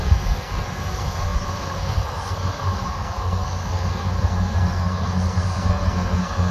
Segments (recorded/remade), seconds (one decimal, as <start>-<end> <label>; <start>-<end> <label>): 0.0-6.5 remade